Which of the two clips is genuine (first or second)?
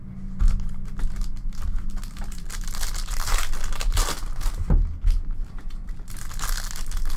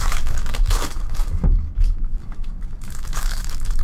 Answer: first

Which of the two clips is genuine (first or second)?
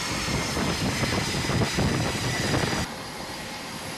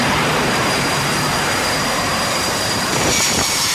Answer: first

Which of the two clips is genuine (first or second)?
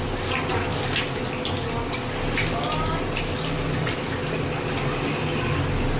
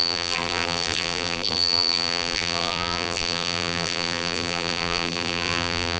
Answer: first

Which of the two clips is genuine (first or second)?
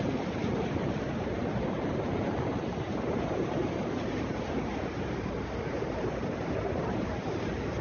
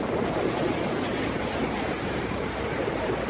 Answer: second